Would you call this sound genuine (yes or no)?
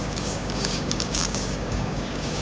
no